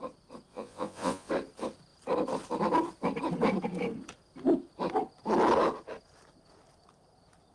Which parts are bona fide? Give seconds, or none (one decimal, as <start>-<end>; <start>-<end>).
0.0-0.5; 1.3-7.5